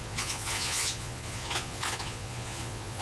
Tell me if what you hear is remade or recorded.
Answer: remade